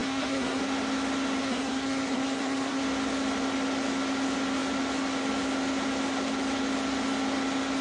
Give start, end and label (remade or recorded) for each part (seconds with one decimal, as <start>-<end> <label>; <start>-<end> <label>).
0.0-0.6 remade; 0.6-1.4 recorded; 1.4-2.8 remade; 2.8-7.8 recorded